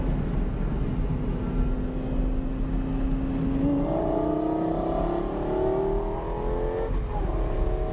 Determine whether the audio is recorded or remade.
recorded